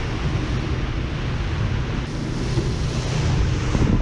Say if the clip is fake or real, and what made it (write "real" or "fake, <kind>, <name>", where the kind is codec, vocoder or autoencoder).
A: real